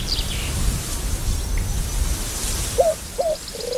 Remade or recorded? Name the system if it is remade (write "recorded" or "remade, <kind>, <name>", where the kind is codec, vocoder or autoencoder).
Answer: recorded